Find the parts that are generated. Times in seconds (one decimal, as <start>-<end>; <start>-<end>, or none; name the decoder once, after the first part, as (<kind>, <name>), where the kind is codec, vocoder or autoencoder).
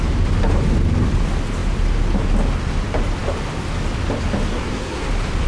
4.5-5.1 (codec, SNAC)